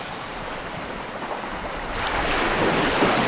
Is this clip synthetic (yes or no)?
no